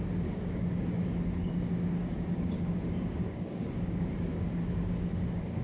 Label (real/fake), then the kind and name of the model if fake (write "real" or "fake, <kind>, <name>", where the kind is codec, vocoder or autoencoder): fake, codec, DAC